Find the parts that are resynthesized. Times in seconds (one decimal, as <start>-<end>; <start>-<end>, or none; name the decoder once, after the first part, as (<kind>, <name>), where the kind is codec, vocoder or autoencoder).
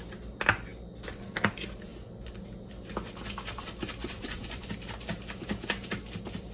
4.0-4.7 (vocoder, Vocos)